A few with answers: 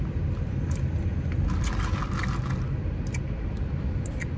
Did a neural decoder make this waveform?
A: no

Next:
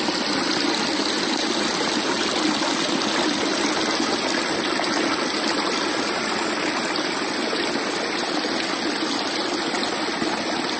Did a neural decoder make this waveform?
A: no